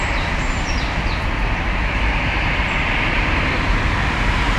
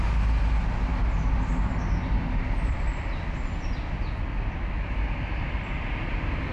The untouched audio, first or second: second